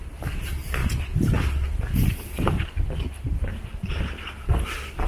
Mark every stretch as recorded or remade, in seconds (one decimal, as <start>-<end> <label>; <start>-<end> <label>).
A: 0.0-5.1 recorded